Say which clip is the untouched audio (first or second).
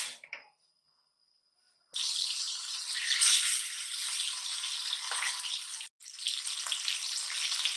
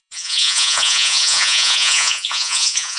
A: first